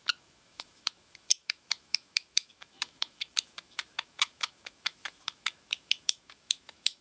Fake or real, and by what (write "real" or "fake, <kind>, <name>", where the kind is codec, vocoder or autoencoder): fake, autoencoder, DAC-VAE